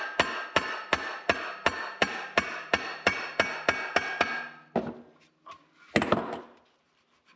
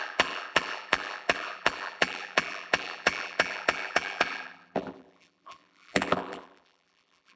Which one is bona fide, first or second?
first